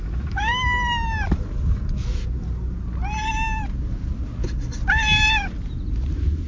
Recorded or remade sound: recorded